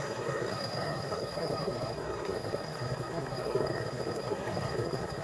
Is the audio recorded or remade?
remade